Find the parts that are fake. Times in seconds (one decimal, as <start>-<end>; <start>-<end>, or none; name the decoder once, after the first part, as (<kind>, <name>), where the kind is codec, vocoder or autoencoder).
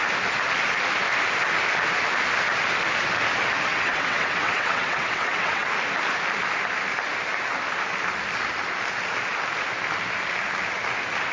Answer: 3.7-5.7 (vocoder, WaveNeXt)